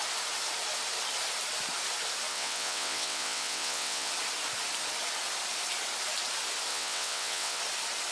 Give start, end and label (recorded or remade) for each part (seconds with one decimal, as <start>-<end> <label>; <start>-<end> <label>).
0.0-2.3 recorded; 2.3-4.1 remade; 4.1-6.7 recorded; 6.7-7.6 remade; 7.6-8.1 recorded